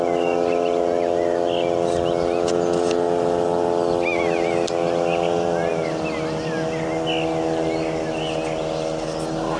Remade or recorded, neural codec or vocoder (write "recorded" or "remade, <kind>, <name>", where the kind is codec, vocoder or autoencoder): recorded